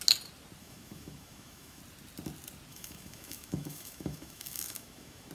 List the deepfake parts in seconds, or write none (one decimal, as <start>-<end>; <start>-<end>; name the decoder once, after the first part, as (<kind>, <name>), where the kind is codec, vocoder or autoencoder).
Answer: 0.6-1.8 (autoencoder, DAC-VAE); 2.7-5.3